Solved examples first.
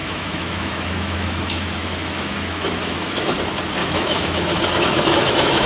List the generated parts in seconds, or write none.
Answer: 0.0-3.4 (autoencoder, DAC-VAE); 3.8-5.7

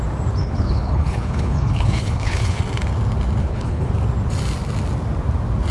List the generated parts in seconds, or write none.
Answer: 0.4-2.6 (codec, HILCodec); 3.4-3.9

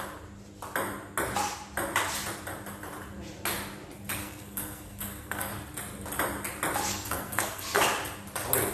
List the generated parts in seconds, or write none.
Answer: 4.2-5.5 (codec, SNAC); 6.9-7.8

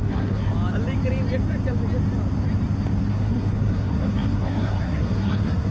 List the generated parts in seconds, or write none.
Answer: 0.0-0.5 (codec, SNAC); 3.1-5.7

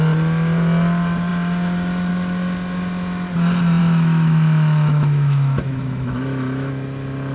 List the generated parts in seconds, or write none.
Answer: 3.8-6.7 (autoencoder, DAC-VAE)

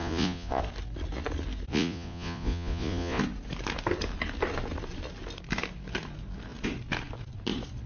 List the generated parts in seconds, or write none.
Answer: 0.0-0.6 (vocoder, Vocos); 1.7-3.2